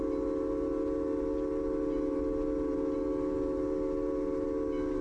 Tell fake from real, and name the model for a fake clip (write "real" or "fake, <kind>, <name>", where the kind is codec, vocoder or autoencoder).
real